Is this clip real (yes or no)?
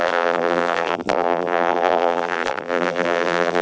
no